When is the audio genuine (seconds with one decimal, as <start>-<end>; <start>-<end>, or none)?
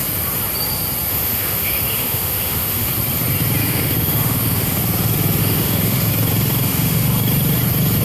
0.0-1.1; 2.9-3.6; 4.8-5.4; 6.1-6.6; 7.2-8.0